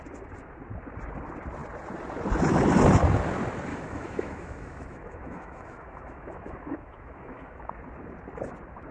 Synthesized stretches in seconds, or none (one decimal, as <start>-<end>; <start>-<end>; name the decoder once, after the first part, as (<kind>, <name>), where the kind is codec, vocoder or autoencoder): 3.7-7.7 (autoencoder, DAC-VAE)